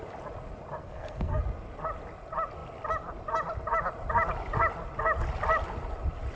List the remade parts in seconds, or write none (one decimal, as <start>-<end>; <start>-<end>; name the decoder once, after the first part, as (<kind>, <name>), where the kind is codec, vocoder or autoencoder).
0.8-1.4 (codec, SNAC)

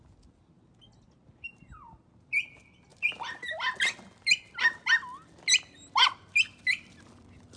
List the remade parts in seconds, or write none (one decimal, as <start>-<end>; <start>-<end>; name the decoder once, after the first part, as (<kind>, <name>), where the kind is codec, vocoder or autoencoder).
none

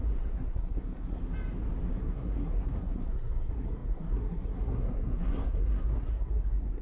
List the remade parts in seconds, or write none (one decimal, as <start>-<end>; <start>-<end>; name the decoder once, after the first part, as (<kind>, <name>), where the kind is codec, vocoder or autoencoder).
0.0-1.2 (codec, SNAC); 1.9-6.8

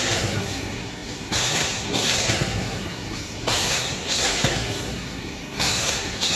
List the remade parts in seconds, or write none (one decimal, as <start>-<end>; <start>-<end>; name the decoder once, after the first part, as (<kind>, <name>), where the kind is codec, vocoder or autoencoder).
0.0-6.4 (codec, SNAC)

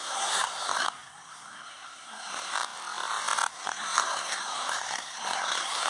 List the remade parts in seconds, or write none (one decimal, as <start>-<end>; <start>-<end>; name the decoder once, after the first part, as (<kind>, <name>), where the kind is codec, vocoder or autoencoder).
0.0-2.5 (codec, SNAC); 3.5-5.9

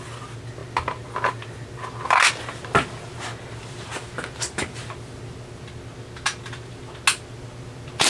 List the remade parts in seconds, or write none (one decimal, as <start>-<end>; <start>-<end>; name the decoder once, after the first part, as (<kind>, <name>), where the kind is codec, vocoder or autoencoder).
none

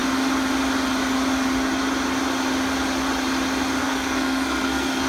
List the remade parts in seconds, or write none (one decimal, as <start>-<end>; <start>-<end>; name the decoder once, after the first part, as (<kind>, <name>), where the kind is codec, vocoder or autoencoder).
3.8-5.1 (codec, SNAC)

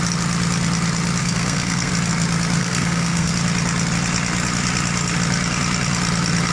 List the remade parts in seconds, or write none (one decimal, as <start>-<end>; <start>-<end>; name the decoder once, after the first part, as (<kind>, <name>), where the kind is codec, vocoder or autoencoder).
1.2-1.9 (codec, SNAC); 2.6-3.3